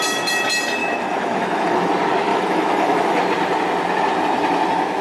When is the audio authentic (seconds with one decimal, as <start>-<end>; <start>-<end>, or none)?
0.0-0.8; 1.9-2.3; 3.2-5.0